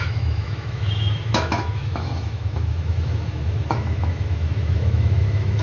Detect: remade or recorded remade